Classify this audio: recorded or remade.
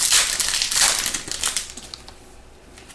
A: recorded